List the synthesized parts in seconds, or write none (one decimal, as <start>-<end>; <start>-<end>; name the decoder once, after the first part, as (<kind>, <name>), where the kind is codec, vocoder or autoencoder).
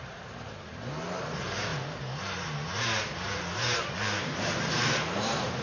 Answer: 0.0-5.6 (vocoder, BigVGAN v2)